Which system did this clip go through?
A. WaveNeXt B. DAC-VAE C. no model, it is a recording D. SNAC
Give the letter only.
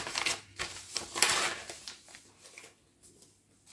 C